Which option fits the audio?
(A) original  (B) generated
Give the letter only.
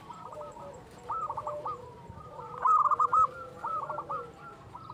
B